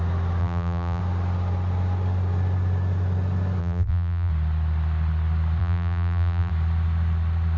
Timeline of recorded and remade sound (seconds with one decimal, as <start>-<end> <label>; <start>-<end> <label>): 0.0-0.4 recorded; 0.4-1.0 remade; 1.0-3.6 recorded; 3.6-4.3 remade; 4.3-5.6 recorded; 5.6-6.5 remade; 6.5-7.6 recorded